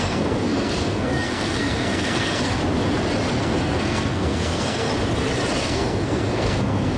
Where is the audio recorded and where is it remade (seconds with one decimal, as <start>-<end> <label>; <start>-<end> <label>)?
0.0-2.6 remade; 2.6-3.4 recorded; 3.4-4.9 remade; 4.9-5.6 recorded; 5.6-7.0 remade